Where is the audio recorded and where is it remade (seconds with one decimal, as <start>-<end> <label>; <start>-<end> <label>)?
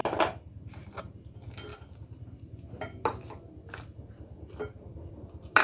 0.0-5.6 recorded